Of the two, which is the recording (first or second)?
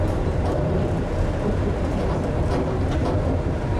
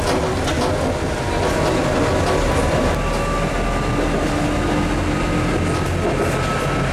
second